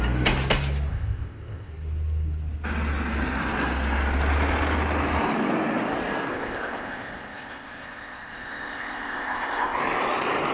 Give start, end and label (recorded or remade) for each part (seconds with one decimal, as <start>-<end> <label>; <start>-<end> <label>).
0.0-0.9 recorded; 0.9-1.7 remade; 1.7-6.3 recorded; 6.3-9.8 remade; 9.8-10.5 recorded